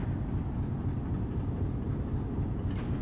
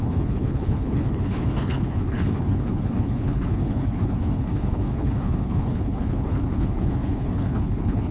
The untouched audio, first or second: first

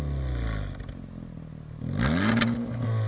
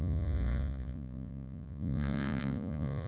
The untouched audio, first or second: first